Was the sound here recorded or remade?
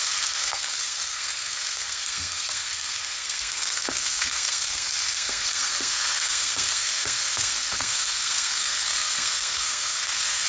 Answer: remade